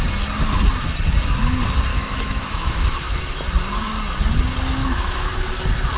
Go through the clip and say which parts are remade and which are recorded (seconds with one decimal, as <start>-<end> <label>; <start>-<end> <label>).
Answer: 0.0-1.9 recorded; 1.9-3.2 remade; 3.2-4.8 recorded; 4.8-5.3 remade; 5.3-6.0 recorded